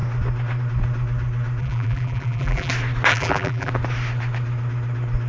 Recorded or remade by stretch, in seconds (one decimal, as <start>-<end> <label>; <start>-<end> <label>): 0.0-1.6 recorded; 1.6-2.7 remade; 2.7-3.1 recorded; 3.1-3.7 remade; 3.7-5.3 recorded